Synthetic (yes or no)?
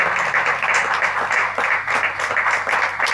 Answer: no